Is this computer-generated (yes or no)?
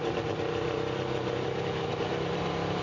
yes